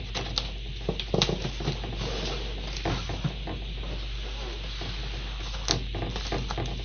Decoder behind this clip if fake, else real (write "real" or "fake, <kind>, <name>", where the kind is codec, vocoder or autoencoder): real